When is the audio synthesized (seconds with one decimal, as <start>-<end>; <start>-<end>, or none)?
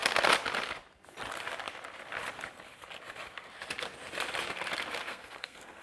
5.1-5.8